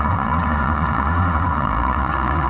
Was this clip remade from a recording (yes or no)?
yes